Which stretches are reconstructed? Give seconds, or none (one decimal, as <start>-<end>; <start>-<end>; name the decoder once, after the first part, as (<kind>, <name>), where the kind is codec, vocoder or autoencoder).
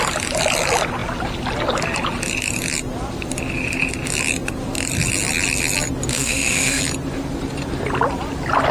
6.1-6.8 (autoencoder, DAC-VAE)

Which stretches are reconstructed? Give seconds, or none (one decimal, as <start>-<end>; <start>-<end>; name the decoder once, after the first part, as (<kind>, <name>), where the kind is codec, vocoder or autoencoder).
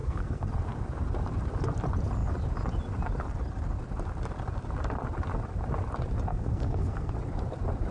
0.0-0.5 (codec, SNAC); 6.3-7.1